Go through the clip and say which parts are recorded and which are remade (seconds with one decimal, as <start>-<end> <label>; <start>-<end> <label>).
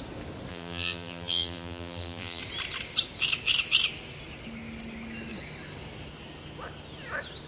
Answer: 0.0-0.5 recorded; 0.5-2.4 remade; 2.4-7.5 recorded